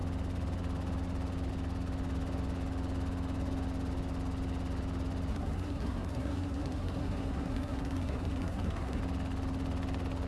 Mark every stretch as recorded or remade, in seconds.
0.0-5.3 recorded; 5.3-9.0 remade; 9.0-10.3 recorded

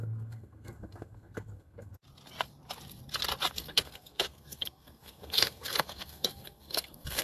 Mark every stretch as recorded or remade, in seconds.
0.0-1.9 remade; 1.9-3.6 recorded; 3.6-7.2 remade

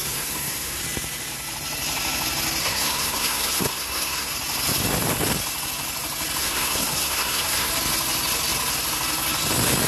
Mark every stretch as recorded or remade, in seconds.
0.0-0.8 remade; 0.8-2.6 recorded; 2.6-4.3 remade; 4.3-6.4 recorded; 6.4-7.7 remade; 7.7-9.9 recorded